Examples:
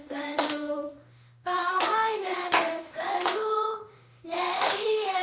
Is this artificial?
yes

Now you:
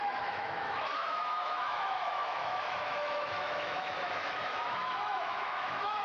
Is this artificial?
yes